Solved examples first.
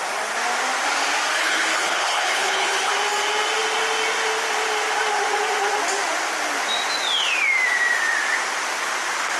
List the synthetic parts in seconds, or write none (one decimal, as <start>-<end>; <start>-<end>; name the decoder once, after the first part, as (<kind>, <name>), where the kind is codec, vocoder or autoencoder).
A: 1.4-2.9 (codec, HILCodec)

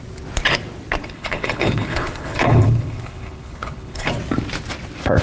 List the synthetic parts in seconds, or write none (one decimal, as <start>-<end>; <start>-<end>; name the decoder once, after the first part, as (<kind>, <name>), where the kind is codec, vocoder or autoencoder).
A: 1.0-4.1 (codec, HILCodec)

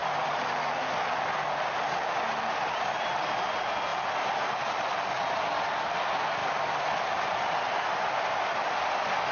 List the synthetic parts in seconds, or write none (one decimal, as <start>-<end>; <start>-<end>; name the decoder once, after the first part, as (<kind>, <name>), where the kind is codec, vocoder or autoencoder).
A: none

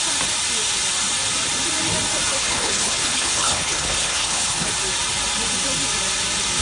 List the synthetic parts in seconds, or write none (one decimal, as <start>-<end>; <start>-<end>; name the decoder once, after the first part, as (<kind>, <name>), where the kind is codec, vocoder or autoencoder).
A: 2.4-4.7 (codec, HILCodec)

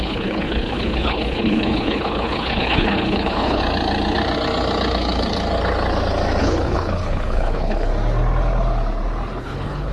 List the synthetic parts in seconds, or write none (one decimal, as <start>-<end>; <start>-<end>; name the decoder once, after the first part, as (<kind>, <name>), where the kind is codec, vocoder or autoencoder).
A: 0.0-3.6 (codec, HILCodec); 6.4-7.9; 9.4-9.9

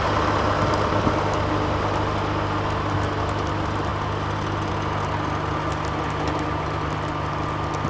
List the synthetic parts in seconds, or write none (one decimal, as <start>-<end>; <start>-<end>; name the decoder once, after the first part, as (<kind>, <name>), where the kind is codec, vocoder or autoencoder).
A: none